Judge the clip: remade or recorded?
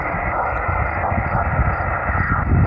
recorded